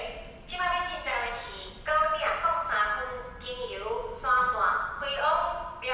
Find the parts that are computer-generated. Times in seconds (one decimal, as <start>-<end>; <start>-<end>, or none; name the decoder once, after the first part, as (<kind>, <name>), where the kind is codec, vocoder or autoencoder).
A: 1.1-1.7 (codec, DAC)